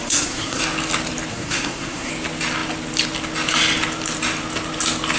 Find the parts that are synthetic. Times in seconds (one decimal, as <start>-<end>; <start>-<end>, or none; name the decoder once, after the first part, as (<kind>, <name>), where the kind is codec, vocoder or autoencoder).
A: 0.0-0.6 (codec, SNAC); 1.3-2.1